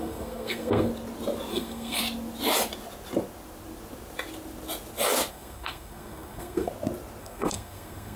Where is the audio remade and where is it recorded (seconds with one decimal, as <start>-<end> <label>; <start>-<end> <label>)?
0.0-0.9 remade; 0.9-1.5 recorded; 1.5-2.0 remade; 2.0-5.3 recorded; 5.3-6.7 remade; 6.7-7.2 recorded; 7.2-8.2 remade